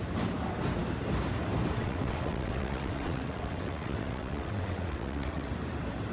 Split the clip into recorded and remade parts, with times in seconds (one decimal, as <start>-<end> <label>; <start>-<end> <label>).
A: 0.0-1.8 recorded; 1.8-5.5 remade; 5.5-6.1 recorded